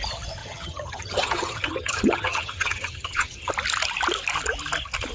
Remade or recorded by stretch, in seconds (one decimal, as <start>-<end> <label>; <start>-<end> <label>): 0.0-0.4 recorded; 0.4-3.5 remade; 3.5-5.1 recorded